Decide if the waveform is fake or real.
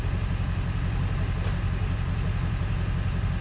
real